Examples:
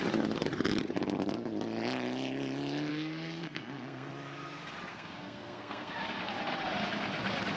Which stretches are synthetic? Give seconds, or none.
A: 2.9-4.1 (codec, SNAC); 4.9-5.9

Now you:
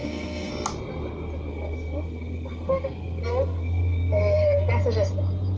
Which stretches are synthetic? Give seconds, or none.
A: 0.0-0.5 (codec, SNAC); 1.5-4.7

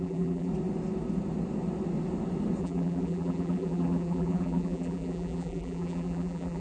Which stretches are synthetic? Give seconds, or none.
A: 0.0-0.5 (vocoder, BigVGAN v2); 2.6-6.6